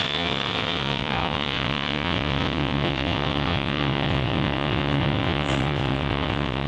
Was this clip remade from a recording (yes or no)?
yes